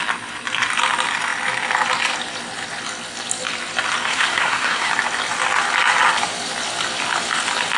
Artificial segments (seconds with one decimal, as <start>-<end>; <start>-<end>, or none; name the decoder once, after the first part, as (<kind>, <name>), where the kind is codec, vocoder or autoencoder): 4.1-4.9 (codec, SNAC)